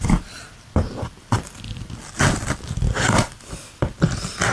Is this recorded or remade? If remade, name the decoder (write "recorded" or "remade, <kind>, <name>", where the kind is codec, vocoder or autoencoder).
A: remade, vocoder, BigVGAN v2